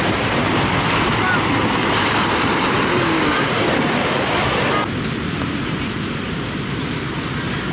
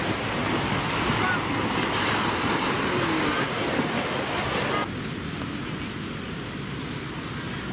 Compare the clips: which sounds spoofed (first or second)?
first